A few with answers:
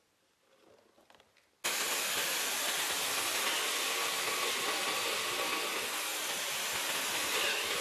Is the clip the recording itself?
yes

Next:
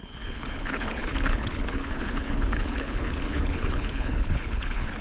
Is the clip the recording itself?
no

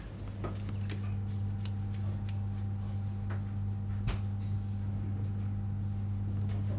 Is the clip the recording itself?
yes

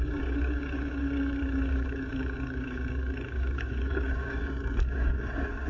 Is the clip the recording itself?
no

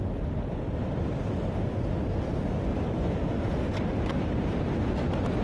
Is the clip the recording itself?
yes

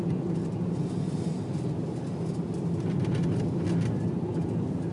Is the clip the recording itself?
yes